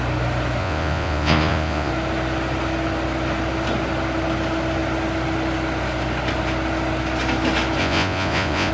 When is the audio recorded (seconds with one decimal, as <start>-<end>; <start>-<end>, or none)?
0.0-0.6; 1.9-7.8